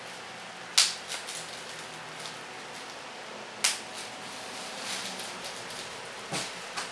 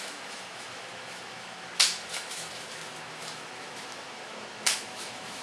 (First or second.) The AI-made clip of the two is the second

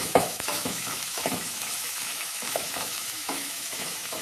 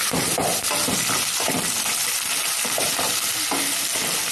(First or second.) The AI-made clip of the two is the first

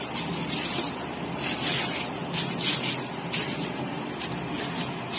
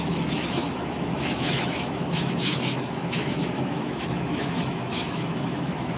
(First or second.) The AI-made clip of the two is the second